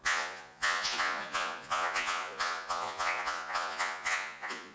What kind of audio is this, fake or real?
fake